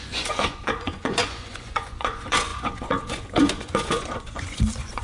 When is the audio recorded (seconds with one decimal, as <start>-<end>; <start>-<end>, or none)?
none